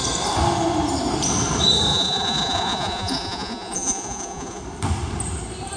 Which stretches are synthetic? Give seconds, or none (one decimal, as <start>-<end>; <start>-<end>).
1.9-4.6

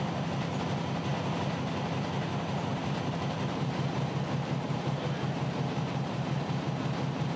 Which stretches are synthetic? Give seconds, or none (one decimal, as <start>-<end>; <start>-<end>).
2.7-6.8

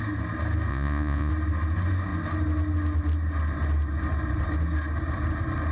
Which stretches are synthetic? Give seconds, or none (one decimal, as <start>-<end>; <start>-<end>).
0.7-1.3

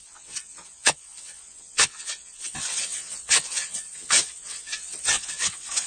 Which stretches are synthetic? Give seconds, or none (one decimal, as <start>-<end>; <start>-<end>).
0.0-5.9

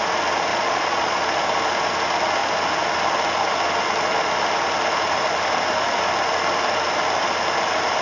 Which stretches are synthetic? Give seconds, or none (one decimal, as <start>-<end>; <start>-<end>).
0.5-1.2

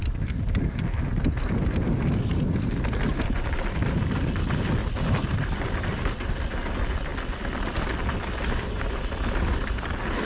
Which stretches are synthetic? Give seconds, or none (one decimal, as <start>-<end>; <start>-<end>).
4.8-6.3